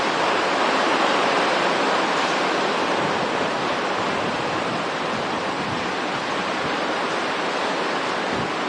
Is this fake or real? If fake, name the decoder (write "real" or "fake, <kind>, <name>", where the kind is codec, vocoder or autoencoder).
real